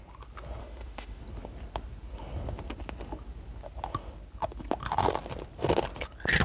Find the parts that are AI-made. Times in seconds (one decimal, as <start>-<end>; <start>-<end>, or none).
0.6-1.2